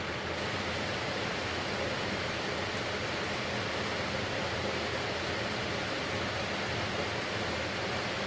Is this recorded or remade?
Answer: recorded